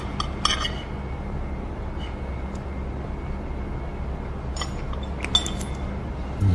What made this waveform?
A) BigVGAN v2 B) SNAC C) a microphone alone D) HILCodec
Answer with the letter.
C